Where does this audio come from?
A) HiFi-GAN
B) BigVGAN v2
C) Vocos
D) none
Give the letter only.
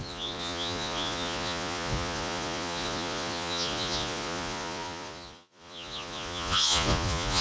C